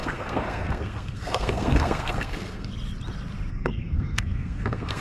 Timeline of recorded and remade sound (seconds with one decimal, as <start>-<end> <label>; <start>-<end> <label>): 0.0-2.7 remade; 2.7-3.5 recorded; 3.5-5.0 remade